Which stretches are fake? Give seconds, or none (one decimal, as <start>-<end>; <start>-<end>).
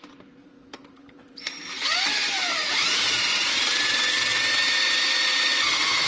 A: 0.4-3.7; 4.6-6.1